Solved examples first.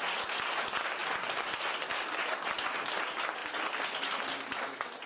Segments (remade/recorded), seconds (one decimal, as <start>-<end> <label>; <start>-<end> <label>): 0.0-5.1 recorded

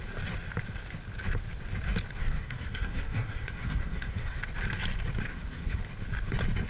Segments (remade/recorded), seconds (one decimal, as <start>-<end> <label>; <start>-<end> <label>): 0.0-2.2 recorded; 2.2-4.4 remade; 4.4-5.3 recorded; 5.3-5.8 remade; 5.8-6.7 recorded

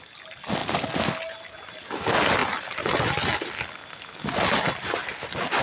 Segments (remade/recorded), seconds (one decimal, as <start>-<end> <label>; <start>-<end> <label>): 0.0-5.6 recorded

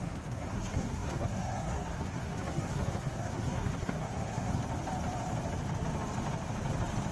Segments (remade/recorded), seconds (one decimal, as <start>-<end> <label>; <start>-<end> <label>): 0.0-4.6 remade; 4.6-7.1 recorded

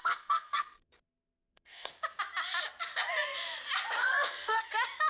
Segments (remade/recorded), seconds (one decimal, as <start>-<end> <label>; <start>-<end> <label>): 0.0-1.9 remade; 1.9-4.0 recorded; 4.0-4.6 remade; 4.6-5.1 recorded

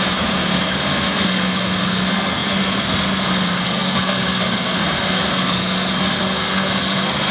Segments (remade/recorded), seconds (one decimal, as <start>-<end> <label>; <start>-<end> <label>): 0.0-7.3 remade